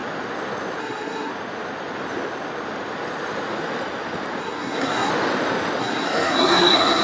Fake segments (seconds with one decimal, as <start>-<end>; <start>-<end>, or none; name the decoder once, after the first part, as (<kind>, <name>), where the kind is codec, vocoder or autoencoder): 0.8-1.3 (codec, SNAC); 4.4-5.1; 5.8-7.0